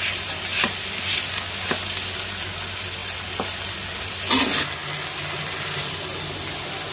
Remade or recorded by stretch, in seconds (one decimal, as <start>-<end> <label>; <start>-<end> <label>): 0.0-6.9 recorded